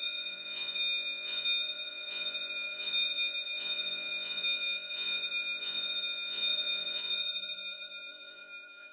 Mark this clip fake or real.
fake